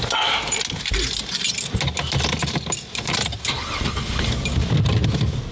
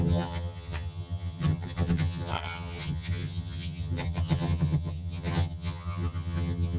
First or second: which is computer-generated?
second